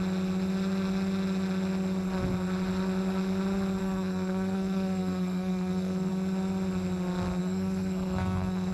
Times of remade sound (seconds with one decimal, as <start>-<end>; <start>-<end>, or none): 3.8-6.1; 7.4-8.7